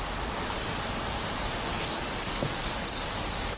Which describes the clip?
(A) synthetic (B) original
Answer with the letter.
B